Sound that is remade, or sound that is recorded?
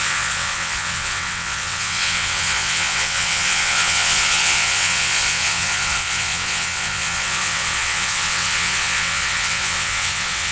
remade